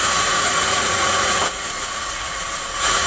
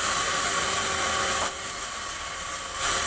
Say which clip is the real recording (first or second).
second